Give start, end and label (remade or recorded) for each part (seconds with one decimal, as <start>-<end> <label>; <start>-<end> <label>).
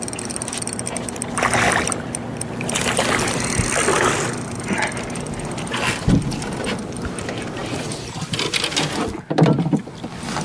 0.0-7.6 recorded; 7.6-9.8 remade; 9.8-10.4 recorded